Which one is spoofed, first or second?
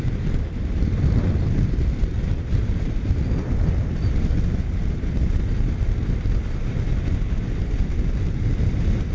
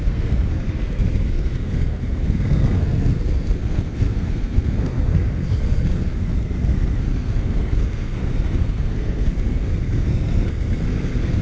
second